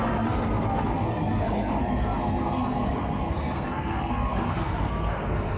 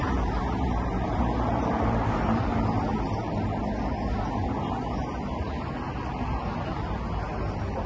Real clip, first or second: second